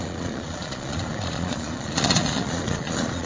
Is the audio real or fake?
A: fake